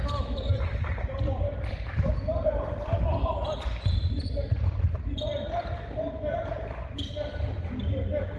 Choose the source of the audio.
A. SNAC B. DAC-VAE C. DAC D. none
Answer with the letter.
D